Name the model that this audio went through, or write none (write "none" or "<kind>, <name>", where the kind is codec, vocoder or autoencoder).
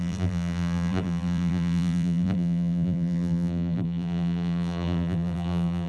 vocoder, BigVGAN v2